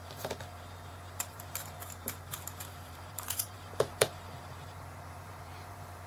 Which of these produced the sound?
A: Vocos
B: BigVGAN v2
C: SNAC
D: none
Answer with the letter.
B